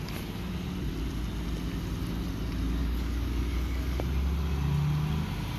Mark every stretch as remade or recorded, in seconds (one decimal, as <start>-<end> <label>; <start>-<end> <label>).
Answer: 0.0-2.8 recorded; 2.8-4.0 remade; 4.0-5.6 recorded